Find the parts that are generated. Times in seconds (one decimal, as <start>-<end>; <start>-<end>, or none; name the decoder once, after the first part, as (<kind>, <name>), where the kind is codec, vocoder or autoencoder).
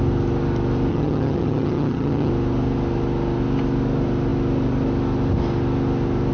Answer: 0.9-2.3 (vocoder, HiFi-GAN)